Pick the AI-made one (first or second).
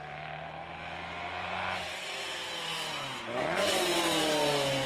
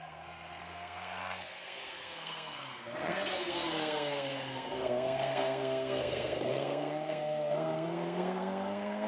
second